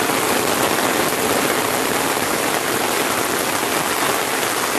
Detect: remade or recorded recorded